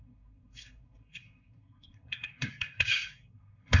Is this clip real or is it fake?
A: fake